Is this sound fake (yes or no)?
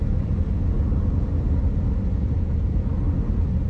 no